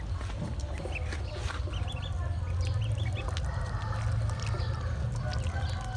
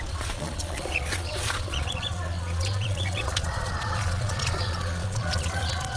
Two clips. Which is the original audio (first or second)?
first